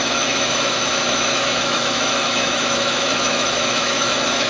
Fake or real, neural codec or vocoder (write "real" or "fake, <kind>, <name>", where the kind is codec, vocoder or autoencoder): fake, autoencoder, DAC-VAE